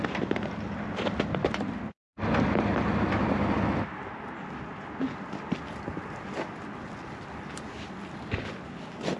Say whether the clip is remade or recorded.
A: recorded